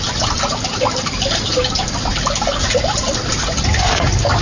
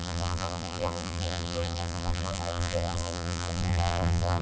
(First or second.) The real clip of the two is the first